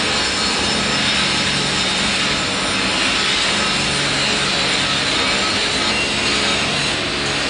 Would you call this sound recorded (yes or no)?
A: yes